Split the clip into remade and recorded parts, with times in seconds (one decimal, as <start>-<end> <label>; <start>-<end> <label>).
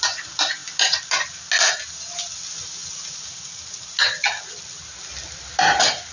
0.0-6.1 recorded